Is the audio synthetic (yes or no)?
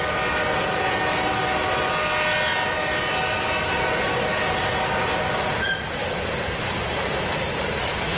no